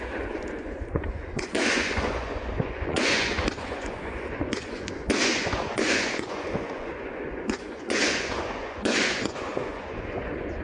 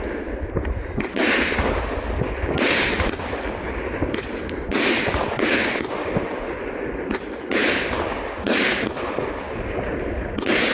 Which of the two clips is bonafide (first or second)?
second